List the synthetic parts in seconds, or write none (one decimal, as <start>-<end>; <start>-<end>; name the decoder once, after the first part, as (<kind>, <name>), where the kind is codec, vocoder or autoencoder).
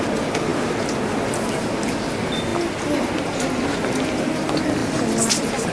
none